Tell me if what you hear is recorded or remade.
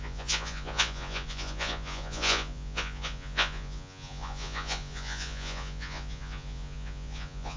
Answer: remade